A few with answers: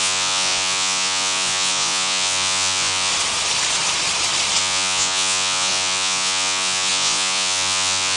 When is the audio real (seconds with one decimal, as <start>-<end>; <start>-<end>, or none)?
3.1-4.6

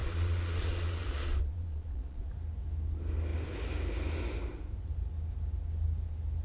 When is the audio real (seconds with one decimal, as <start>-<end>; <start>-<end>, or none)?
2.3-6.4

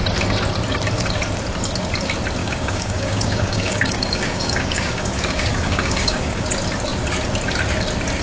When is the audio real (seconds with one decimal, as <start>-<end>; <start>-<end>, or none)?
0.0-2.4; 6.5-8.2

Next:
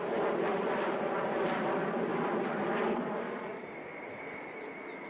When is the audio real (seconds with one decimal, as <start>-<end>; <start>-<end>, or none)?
0.0-0.5; 1.0-2.1; 3.1-5.1